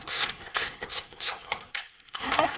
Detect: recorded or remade remade